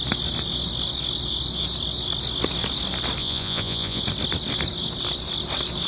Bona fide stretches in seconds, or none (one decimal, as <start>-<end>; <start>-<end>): 0.0-3.2; 4.0-5.9